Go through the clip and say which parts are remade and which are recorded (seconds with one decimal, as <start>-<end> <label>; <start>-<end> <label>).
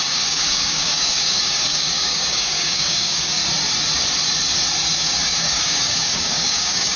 0.0-3.4 remade; 3.4-4.9 recorded; 4.9-7.0 remade